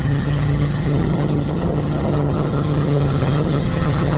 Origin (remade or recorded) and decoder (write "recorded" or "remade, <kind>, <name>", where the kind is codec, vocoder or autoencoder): remade, vocoder, HiFi-GAN